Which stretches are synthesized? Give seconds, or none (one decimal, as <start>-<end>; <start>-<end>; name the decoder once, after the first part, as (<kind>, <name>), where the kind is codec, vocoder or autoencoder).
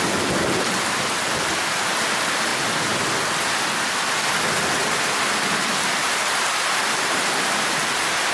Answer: none